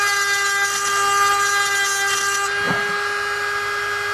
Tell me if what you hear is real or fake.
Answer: real